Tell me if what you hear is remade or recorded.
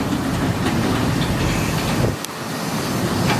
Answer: recorded